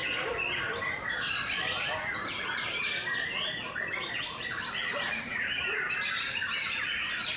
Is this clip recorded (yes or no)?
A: no